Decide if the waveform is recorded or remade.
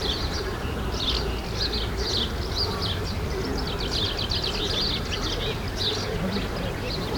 recorded